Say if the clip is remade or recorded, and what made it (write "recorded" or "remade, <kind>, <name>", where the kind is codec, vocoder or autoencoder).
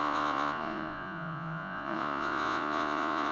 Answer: remade, vocoder, Vocos